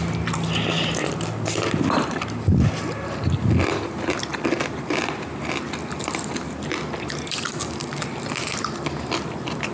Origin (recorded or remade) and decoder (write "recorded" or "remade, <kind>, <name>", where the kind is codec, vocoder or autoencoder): remade, vocoder, BigVGAN v2